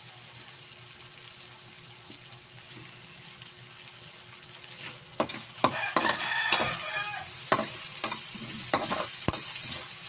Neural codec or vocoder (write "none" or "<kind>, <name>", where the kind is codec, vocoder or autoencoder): none